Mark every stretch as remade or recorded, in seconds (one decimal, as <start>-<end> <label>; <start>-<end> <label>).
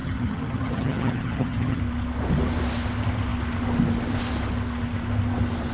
0.0-1.8 remade; 1.8-5.7 recorded